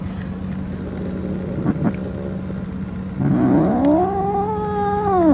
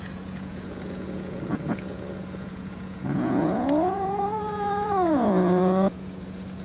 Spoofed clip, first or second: second